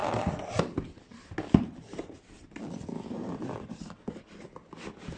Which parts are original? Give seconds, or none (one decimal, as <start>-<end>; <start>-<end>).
0.0-5.2